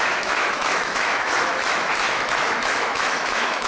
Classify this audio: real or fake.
fake